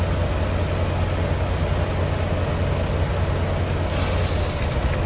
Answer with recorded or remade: recorded